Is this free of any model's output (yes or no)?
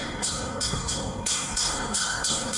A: no